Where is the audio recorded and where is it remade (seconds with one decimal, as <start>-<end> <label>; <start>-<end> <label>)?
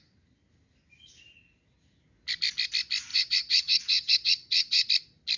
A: 0.0-3.1 recorded; 3.1-4.9 remade; 4.9-5.4 recorded